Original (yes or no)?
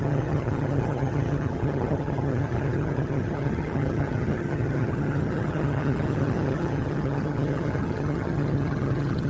no